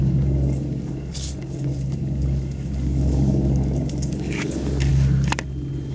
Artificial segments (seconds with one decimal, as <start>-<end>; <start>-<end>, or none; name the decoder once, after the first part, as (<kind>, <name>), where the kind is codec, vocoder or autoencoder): 0.0-4.9 (codec, DAC)